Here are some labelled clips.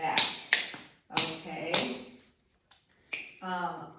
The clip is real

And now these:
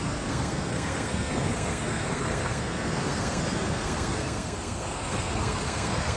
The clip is fake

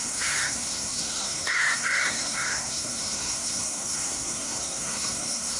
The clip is fake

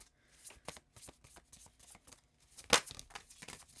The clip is real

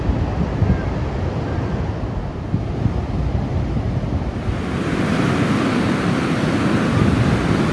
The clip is real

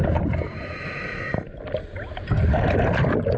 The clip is real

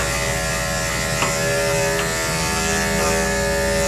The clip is real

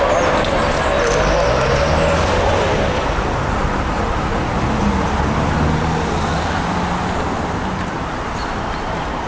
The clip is real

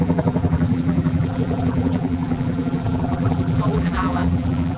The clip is fake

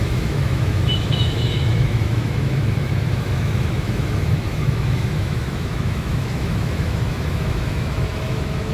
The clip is fake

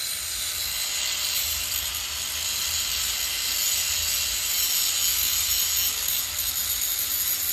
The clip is real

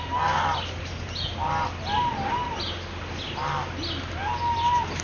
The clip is real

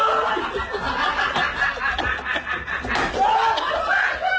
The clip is real